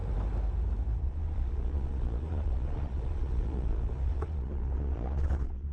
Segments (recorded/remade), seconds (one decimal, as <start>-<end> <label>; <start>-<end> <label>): 0.0-1.0 recorded; 1.0-5.7 remade